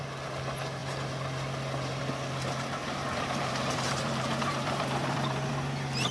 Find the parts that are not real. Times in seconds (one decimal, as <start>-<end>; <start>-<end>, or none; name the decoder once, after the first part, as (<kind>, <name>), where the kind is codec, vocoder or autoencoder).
2.8-5.5 (vocoder, BigVGAN v2)